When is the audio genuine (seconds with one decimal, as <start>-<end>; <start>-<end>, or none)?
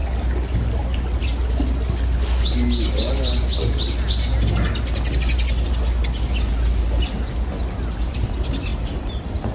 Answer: 0.0-9.5